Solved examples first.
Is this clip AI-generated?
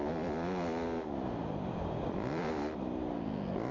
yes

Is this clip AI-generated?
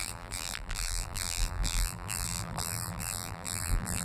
yes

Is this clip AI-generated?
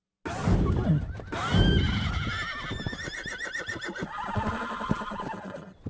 no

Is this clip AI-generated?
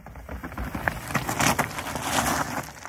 no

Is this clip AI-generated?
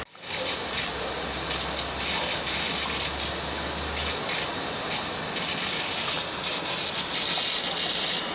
no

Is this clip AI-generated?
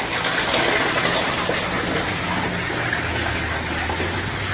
no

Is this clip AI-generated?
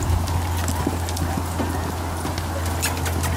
no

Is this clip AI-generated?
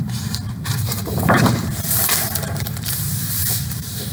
yes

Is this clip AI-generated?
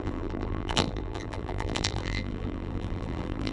yes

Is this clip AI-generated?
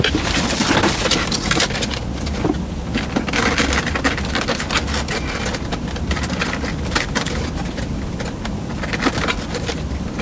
no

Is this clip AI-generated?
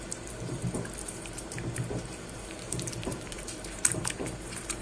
yes